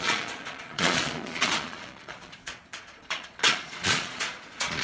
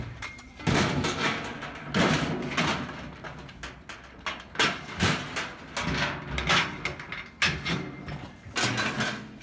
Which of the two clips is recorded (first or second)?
second